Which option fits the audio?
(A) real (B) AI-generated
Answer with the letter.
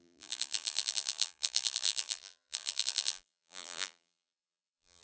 B